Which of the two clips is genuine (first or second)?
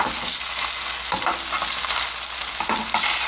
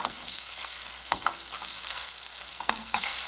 first